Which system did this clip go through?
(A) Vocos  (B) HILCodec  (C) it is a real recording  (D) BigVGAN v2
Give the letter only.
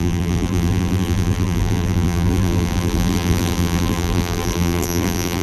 D